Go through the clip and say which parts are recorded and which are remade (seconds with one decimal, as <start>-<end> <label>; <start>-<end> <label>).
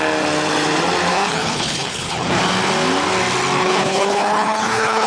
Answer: 0.0-1.1 recorded; 1.1-2.4 remade; 2.4-3.6 recorded; 3.6-5.1 remade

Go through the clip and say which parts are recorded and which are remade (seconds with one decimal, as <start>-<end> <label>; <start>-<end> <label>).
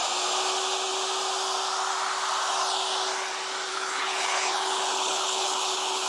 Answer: 0.0-3.7 recorded; 3.7-6.1 remade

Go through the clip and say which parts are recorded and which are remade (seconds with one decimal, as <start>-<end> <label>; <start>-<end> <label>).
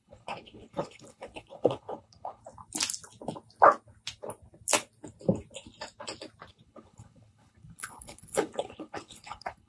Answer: 0.0-2.4 remade; 2.4-6.5 recorded; 6.5-9.7 remade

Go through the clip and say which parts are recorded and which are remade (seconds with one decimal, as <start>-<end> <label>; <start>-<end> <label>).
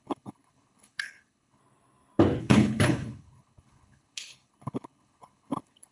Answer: 0.0-1.6 remade; 1.6-2.4 recorded; 2.4-5.9 remade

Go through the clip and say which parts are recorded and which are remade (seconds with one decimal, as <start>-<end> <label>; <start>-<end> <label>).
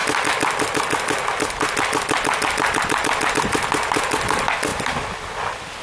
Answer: 0.0-5.8 recorded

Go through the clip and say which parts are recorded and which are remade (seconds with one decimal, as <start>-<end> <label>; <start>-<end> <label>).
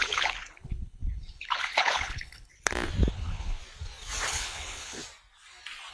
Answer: 0.0-2.5 remade; 2.5-3.1 recorded; 3.1-3.6 remade; 3.6-4.3 recorded; 4.3-5.0 remade; 5.0-5.9 recorded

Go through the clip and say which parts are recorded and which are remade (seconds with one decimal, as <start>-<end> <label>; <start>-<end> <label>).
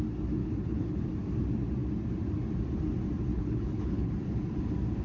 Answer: 0.0-0.4 recorded; 0.4-1.0 remade; 1.0-3.3 recorded; 3.3-4.1 remade; 4.1-5.0 recorded